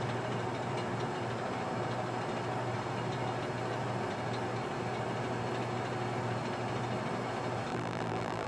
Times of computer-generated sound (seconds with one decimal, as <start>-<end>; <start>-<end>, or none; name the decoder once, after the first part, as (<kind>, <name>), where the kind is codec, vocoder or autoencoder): 7.7-8.5 (vocoder, BigVGAN v2)